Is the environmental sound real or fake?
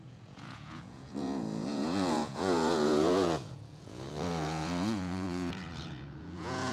fake